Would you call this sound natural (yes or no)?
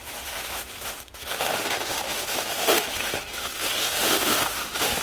no